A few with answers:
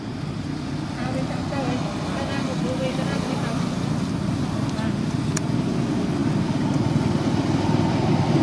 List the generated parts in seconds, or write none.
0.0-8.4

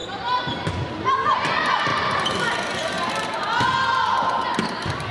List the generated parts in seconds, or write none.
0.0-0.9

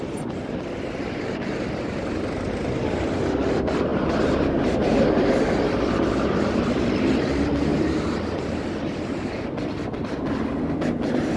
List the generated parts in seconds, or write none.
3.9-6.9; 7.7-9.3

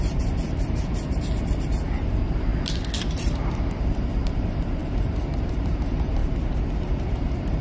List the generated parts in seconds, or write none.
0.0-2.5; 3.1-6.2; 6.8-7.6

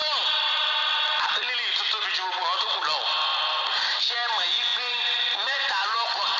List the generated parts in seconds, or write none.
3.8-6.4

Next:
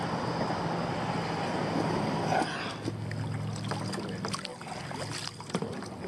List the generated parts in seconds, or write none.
4.5-6.1